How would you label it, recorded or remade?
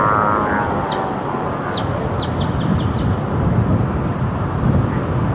recorded